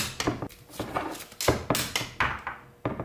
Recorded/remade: recorded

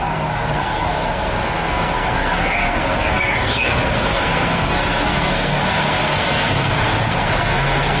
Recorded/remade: remade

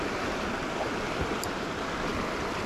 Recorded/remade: recorded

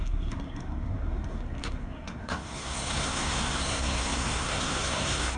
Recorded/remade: remade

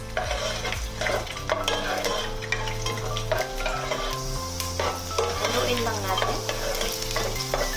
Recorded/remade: recorded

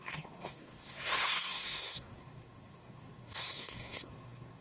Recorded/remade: remade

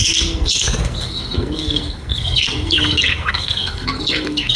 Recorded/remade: remade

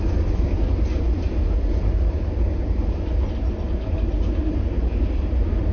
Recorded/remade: recorded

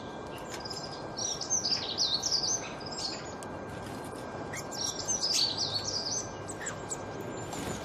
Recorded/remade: recorded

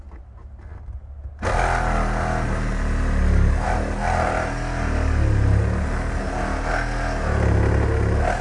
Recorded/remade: recorded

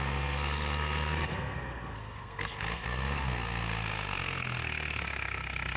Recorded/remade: remade